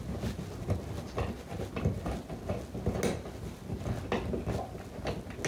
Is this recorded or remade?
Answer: recorded